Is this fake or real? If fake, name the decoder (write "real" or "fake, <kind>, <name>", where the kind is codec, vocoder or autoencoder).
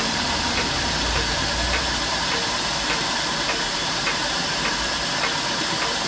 fake, vocoder, BigVGAN v2